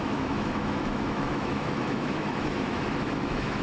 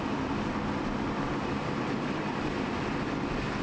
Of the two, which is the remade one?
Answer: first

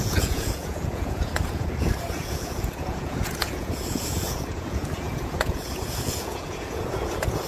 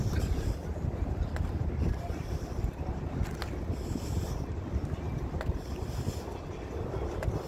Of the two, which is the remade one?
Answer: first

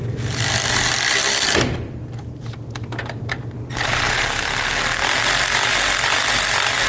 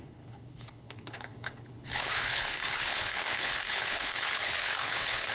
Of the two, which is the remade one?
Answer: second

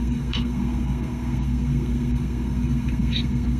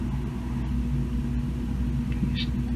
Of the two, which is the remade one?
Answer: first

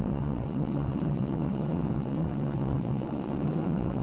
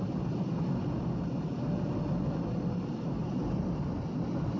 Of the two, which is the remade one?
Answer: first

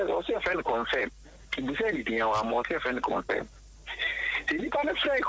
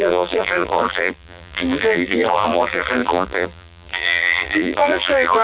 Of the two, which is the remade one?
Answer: second